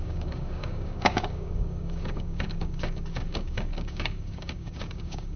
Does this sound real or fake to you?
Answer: fake